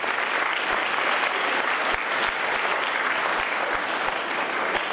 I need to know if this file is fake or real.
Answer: real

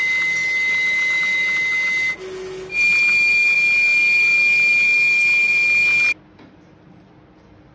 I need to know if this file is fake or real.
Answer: real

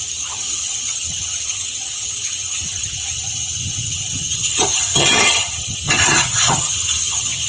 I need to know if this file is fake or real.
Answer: fake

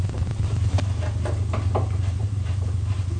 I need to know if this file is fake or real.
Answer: real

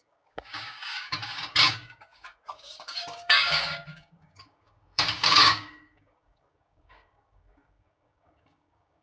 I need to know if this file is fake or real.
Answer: fake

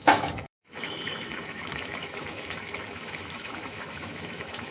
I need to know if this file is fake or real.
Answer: fake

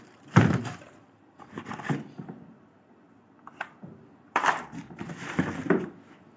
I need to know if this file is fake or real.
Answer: fake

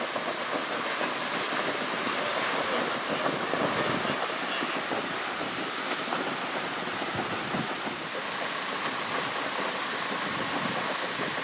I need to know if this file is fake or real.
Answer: real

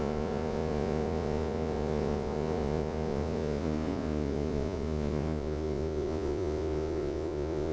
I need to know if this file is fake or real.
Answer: fake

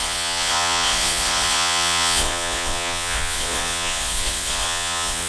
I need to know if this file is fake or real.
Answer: fake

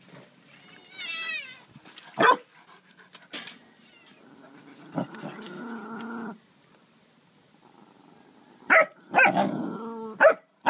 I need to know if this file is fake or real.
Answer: real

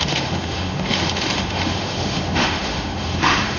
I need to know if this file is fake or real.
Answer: fake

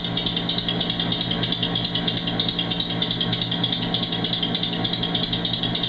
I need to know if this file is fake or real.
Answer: real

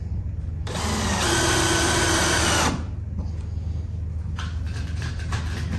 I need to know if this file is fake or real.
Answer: real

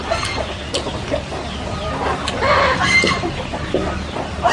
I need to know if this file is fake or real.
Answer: real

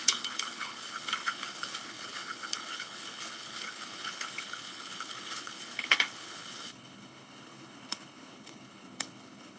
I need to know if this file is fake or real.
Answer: fake